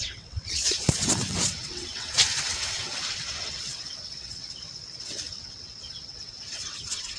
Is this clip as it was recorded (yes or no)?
no